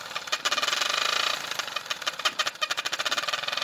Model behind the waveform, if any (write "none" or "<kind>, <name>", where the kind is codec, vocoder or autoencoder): none